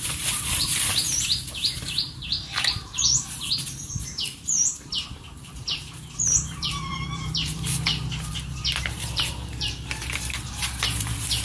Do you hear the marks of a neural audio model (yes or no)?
yes